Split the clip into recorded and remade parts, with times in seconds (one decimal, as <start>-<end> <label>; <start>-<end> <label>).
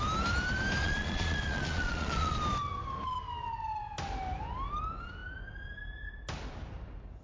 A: 0.0-0.8 recorded; 0.8-2.4 remade; 2.4-7.2 recorded